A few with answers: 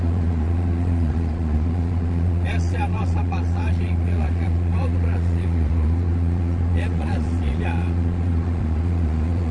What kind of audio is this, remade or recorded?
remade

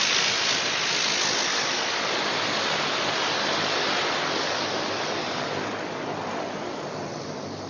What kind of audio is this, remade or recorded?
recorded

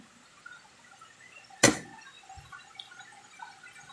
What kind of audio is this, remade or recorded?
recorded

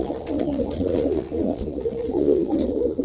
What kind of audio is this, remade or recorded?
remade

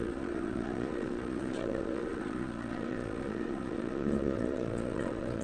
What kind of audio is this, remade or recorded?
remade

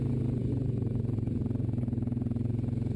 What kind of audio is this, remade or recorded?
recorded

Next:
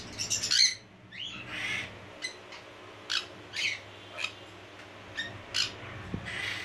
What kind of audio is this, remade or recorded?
recorded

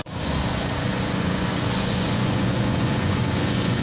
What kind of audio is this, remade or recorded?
remade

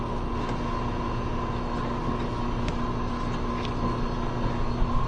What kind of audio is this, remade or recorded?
recorded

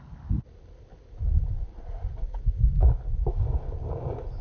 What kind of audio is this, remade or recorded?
recorded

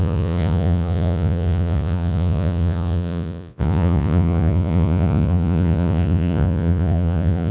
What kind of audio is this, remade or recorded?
remade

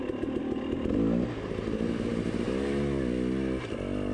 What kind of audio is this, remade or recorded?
recorded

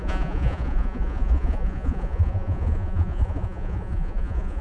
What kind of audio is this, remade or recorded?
remade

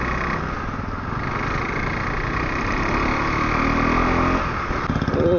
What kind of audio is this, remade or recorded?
recorded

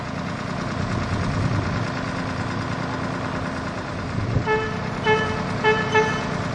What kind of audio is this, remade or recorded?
recorded